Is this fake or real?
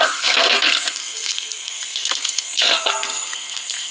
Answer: fake